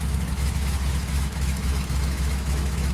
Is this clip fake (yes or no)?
yes